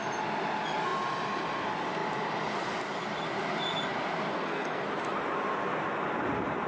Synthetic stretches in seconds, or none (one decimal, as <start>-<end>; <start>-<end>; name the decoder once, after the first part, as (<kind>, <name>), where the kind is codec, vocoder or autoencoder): 4.3-4.8 (codec, SNAC)